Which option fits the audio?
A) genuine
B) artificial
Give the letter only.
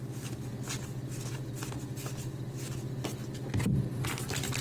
A